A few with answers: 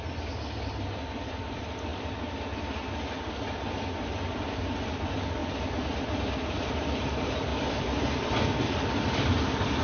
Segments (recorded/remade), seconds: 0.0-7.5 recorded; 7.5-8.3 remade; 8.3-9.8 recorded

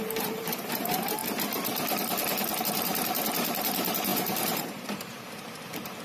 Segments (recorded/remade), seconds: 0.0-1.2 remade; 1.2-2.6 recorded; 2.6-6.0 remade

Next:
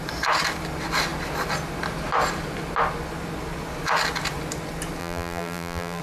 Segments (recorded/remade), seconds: 0.0-5.0 recorded; 5.0-6.0 remade

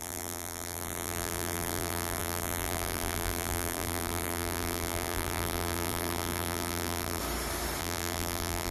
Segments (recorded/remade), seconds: 0.0-7.2 remade; 7.2-7.8 recorded; 7.8-8.7 remade